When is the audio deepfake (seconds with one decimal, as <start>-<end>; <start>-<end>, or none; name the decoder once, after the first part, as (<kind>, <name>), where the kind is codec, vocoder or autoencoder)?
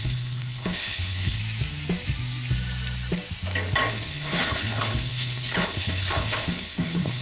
0.0-1.4 (codec, HILCodec); 3.9-7.2